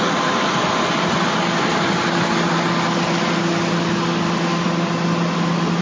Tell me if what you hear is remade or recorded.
recorded